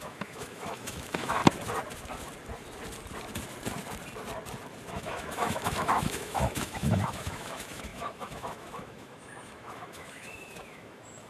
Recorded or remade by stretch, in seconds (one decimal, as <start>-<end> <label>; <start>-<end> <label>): 0.0-1.4 remade; 1.4-4.9 recorded; 4.9-11.3 remade